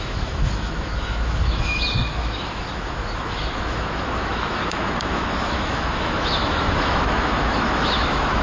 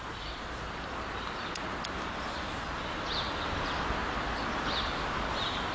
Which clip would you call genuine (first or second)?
second